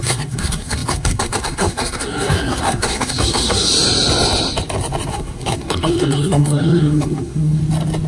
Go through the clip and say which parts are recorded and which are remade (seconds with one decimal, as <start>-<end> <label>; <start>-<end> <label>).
0.0-3.7 remade; 3.7-5.1 recorded; 5.1-7.6 remade; 7.6-8.1 recorded